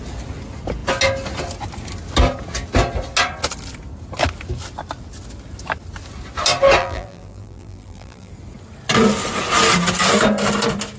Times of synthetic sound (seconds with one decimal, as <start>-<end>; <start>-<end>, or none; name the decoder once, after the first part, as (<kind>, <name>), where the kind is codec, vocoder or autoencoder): 6.8-8.3 (vocoder, BigVGAN v2)